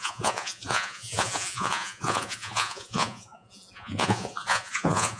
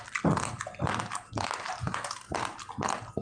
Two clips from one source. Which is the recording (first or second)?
second